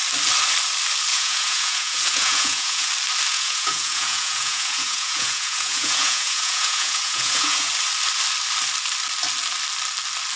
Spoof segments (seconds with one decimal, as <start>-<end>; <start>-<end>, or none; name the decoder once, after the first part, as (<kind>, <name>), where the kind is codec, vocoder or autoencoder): 1.1-2.9 (vocoder, Vocos); 3.3-7.7